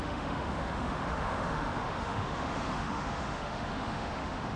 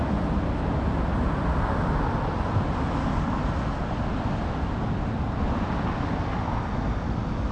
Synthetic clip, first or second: first